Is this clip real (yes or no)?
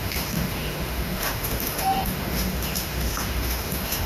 no